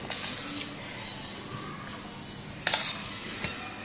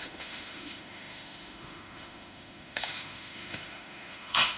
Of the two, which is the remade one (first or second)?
second